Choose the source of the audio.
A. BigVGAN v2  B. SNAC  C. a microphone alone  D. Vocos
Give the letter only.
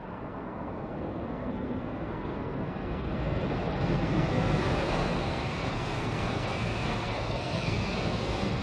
B